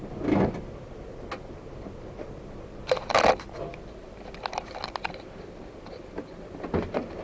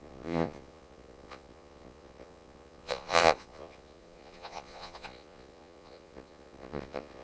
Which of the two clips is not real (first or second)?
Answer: second